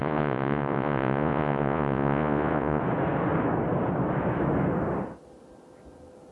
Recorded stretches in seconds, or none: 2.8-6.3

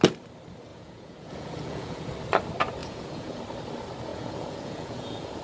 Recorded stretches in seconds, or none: 0.0-0.7; 2.1-2.8; 3.4-4.1

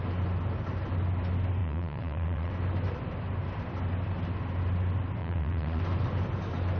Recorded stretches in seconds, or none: 0.0-1.6; 2.5-5.2; 5.8-6.8

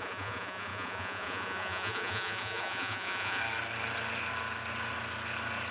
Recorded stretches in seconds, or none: 3.4-5.7

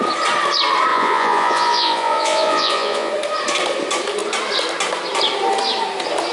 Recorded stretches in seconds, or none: 0.0-0.9; 3.1-6.3